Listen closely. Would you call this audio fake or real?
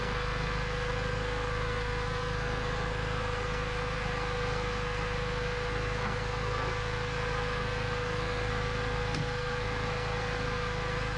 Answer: fake